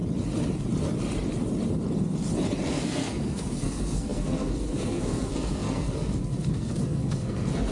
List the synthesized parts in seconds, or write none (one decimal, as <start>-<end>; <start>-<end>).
2.7-7.7